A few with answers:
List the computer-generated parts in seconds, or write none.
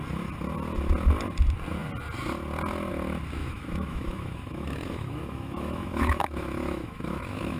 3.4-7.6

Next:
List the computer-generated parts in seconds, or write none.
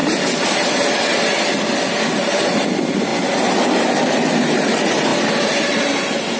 none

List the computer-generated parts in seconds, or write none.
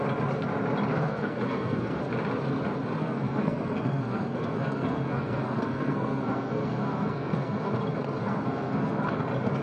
0.9-2.0; 3.0-7.7; 8.2-9.2